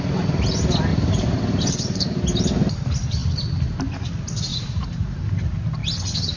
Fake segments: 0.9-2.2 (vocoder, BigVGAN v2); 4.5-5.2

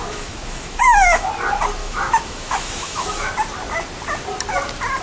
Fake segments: 0.0-1.3 (autoencoder, DAC-VAE); 1.8-3.3

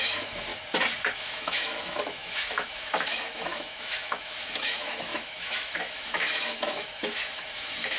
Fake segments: 0.0-0.5 (autoencoder, DAC-VAE); 1.2-8.0

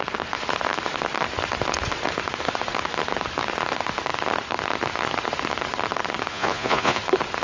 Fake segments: 6.3-7.0 (vocoder, Vocos)

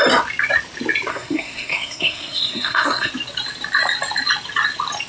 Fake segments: 1.1-3.1 (codec, SNAC)

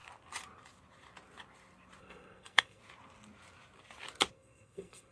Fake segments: 2.0-2.8 (codec, SNAC); 4.3-5.1

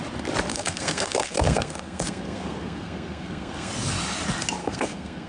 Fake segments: 0.5-3.7 (codec, SNAC); 4.6-5.3

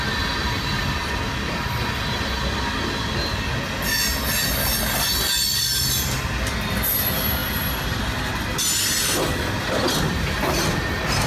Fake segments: none